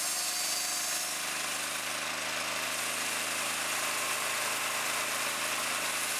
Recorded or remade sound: recorded